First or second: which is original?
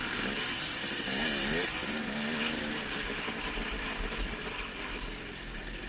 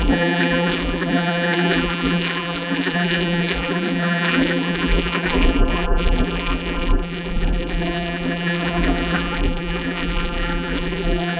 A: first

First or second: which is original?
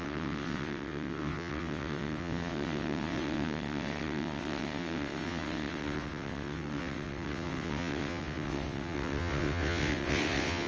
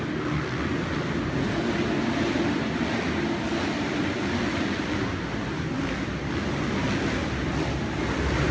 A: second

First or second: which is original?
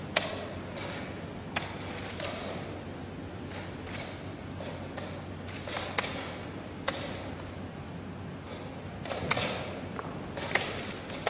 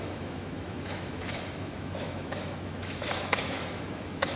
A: first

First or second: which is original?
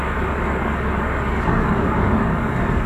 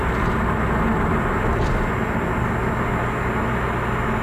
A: second